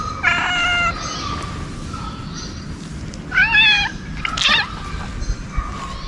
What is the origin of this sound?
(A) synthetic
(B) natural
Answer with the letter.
B